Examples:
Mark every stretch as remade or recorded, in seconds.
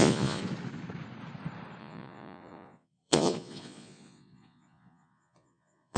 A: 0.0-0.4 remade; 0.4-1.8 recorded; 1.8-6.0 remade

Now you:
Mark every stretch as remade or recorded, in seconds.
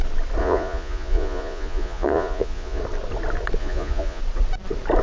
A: 0.0-0.4 recorded; 0.4-2.8 remade; 2.8-3.6 recorded; 3.6-4.2 remade; 4.2-5.0 recorded